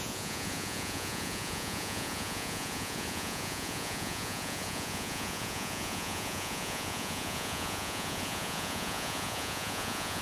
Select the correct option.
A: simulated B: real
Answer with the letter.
A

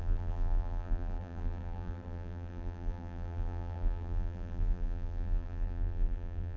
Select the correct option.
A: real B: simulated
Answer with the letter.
B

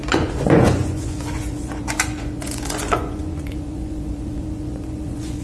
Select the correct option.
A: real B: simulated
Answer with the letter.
B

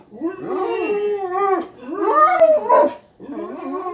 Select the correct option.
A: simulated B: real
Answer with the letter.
B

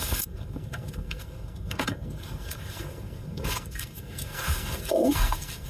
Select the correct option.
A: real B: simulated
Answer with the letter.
B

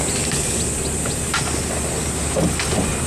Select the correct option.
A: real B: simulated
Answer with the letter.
A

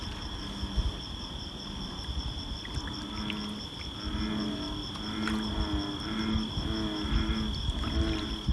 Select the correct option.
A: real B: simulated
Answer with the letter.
A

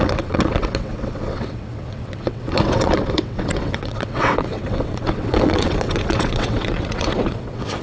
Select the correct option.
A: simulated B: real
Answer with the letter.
A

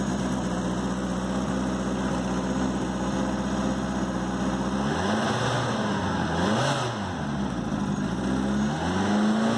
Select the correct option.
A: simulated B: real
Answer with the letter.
B